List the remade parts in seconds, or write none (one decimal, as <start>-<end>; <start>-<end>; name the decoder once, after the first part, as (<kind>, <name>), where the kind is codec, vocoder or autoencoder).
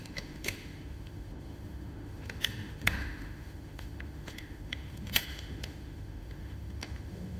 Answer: 0.0-7.4 (autoencoder, DAC-VAE)